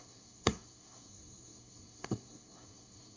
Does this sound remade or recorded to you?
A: remade